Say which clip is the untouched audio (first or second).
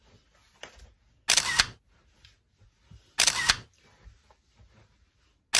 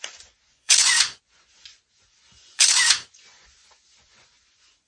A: first